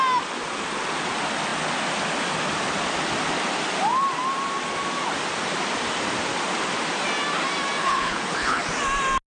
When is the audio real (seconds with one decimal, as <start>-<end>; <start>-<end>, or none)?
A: 0.0-7.8; 8.6-9.3